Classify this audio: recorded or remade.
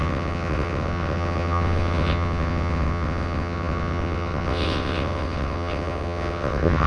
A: remade